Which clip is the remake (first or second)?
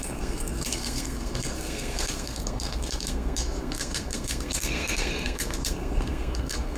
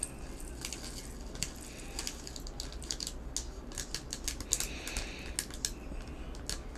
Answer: first